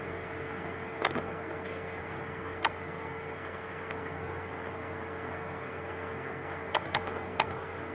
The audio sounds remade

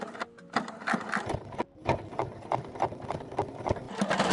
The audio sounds recorded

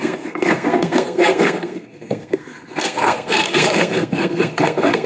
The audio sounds remade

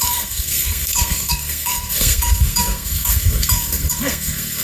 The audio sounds remade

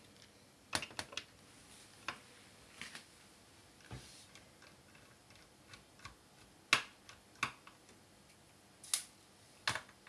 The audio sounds recorded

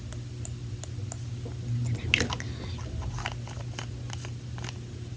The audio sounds recorded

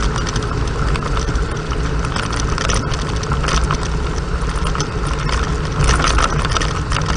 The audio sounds recorded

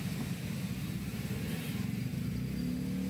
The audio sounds recorded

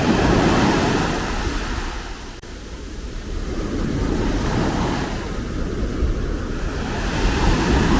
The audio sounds recorded